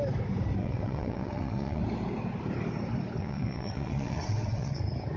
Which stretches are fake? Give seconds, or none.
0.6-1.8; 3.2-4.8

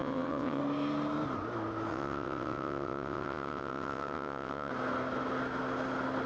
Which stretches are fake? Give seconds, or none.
0.0-0.6; 1.9-4.7